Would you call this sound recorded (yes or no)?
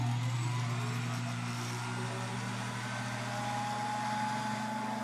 no